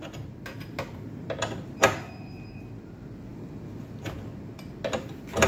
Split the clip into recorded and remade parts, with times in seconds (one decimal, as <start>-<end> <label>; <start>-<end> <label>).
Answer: 0.0-5.5 recorded